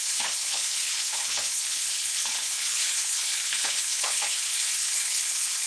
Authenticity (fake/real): fake